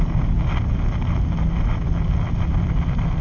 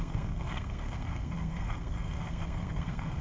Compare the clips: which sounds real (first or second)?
first